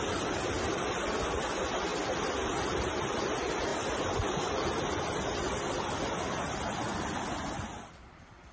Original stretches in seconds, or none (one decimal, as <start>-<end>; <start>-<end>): none